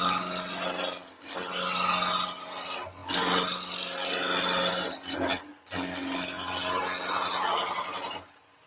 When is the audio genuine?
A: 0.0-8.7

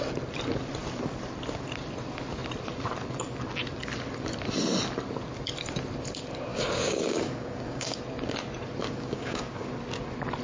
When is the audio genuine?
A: 0.0-6.5; 8.0-8.8; 9.7-10.4